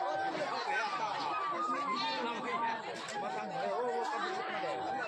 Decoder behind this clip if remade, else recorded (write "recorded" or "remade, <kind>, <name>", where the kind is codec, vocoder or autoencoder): recorded